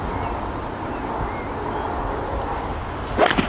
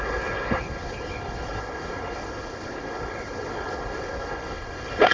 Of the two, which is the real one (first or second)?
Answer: first